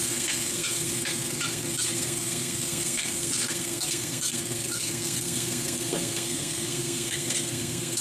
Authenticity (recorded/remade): remade